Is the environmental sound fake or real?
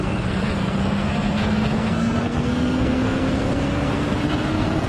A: fake